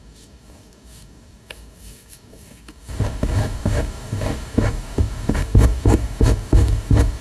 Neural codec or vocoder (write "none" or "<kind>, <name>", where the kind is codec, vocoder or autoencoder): codec, DAC